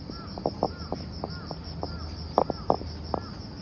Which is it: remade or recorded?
recorded